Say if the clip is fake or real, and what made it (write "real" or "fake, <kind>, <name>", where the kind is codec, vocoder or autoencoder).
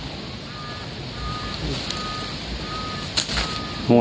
real